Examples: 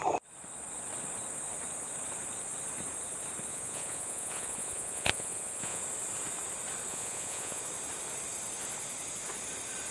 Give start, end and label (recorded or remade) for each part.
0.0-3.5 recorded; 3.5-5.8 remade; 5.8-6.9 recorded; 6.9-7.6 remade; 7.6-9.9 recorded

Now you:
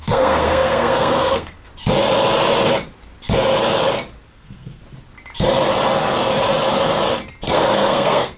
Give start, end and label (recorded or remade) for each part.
0.0-1.7 remade; 1.7-4.3 recorded; 4.3-4.8 remade; 4.8-7.5 recorded; 7.5-8.4 remade

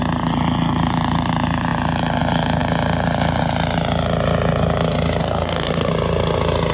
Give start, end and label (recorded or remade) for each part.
0.0-5.2 recorded; 5.2-5.9 remade; 5.9-6.7 recorded

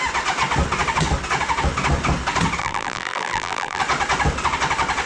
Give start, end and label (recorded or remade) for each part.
0.0-2.6 recorded; 2.6-3.8 remade; 3.8-5.1 recorded